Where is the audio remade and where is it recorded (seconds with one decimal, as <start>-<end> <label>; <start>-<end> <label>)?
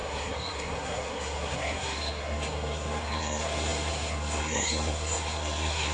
0.0-5.9 remade